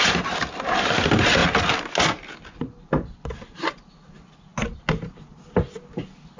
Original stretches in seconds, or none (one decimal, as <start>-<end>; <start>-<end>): 0.0-6.4